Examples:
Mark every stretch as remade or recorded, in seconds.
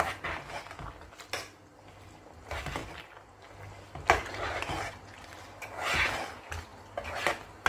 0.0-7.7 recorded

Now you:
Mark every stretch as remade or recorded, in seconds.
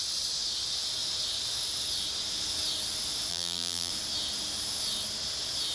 0.0-3.3 recorded; 3.3-3.9 remade; 3.9-5.7 recorded